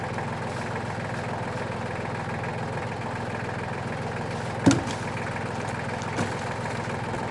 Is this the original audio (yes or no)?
yes